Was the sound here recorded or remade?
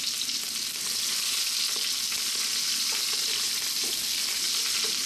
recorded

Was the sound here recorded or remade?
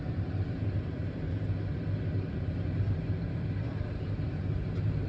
remade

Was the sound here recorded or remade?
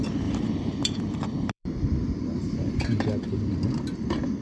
remade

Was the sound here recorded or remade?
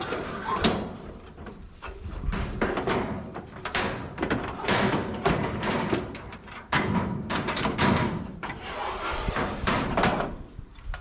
remade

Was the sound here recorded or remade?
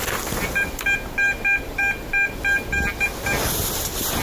recorded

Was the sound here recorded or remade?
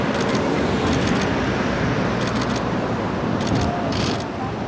remade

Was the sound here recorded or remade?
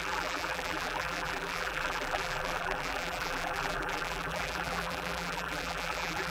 remade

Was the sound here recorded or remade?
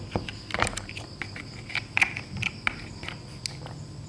recorded